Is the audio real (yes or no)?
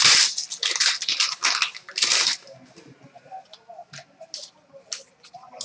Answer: yes